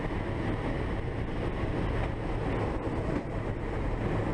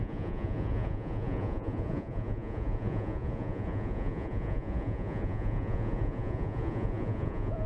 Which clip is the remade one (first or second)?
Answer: second